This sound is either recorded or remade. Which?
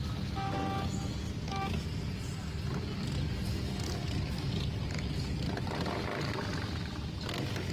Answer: recorded